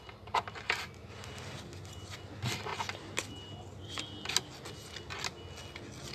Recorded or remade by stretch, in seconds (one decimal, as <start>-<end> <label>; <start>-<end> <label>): 0.0-6.1 recorded